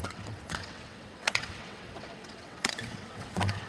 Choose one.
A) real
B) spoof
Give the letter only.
B